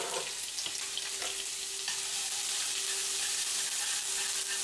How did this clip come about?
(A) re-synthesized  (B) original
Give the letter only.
B